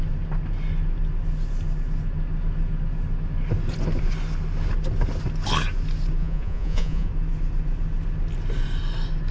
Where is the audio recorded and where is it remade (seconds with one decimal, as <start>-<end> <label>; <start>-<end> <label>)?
0.0-6.2 recorded; 6.2-7.1 remade; 7.1-9.3 recorded